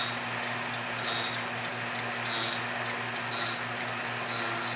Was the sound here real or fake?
real